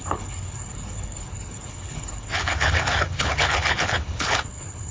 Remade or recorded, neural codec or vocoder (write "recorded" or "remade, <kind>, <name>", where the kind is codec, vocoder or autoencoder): remade, codec, HILCodec